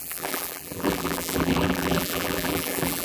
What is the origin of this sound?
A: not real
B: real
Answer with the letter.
A